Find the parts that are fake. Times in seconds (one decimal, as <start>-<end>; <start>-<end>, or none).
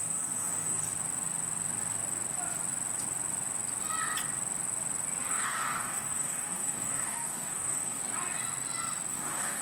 0.0-0.8; 5.3-8.0; 9.1-9.6